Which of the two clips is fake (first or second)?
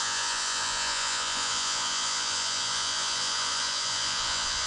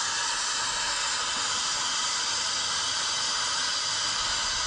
first